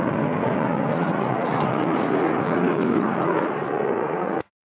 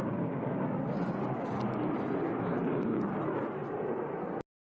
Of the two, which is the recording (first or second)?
second